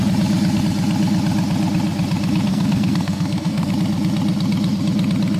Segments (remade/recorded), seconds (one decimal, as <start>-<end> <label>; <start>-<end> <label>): 0.0-2.5 recorded; 2.5-3.7 remade; 3.7-5.4 recorded